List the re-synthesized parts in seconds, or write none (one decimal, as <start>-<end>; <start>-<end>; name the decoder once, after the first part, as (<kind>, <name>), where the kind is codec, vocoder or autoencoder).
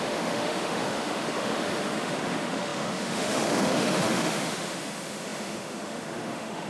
0.0-6.7 (autoencoder, DAC-VAE)